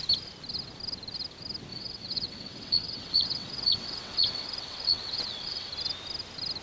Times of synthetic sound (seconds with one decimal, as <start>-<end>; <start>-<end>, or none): 1.7-5.7